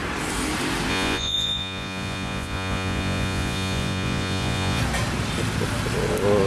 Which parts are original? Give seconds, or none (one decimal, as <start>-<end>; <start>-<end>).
0.0-0.9; 4.8-6.5